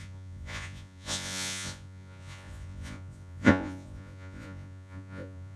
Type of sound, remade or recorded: remade